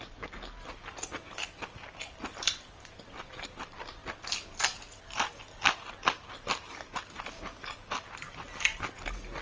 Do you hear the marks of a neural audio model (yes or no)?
no